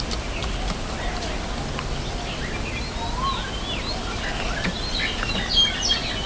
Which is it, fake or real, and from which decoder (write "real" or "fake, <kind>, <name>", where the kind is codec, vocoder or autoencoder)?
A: real